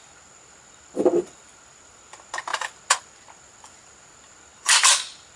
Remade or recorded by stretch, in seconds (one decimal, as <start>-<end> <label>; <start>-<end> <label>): 0.0-5.4 recorded